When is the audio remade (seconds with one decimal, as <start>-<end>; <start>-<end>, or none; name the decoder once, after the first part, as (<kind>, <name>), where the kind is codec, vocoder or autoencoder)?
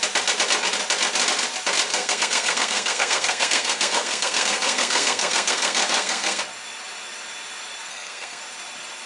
1.9-6.4 (codec, SNAC); 7.9-8.4